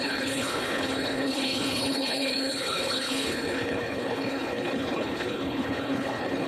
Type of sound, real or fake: fake